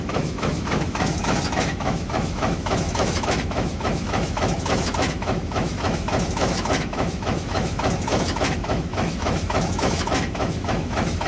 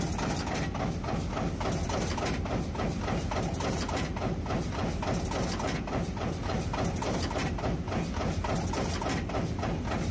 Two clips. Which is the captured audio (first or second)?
second